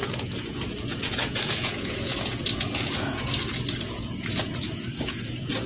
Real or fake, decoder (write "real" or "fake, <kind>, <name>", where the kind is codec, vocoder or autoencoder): fake, vocoder, Vocos